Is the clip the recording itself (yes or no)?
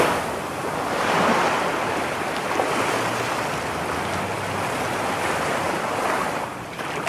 yes